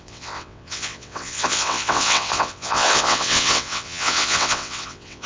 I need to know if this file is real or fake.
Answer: fake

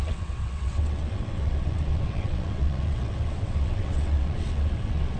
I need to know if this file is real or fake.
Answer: fake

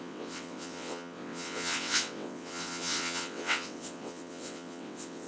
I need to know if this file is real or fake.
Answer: fake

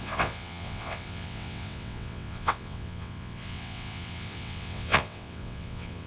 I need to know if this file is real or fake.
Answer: fake